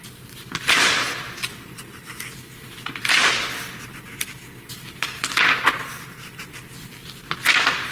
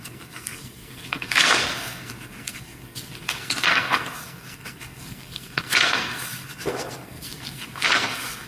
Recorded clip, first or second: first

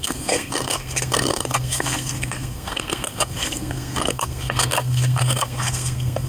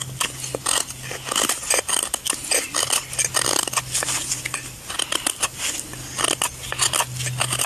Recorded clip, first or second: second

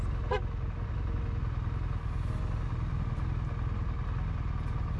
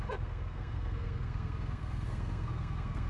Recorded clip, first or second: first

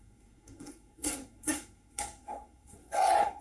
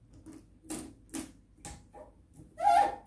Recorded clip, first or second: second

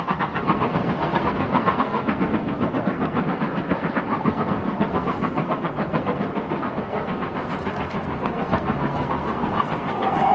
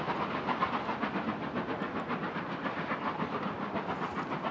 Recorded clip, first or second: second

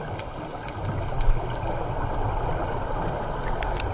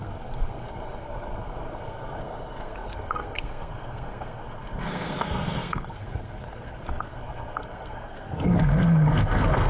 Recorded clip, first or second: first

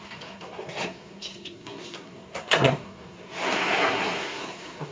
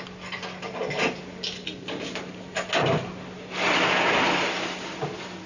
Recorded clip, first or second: second